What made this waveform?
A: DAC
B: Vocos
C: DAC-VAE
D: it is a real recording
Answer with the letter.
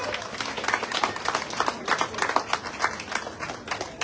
D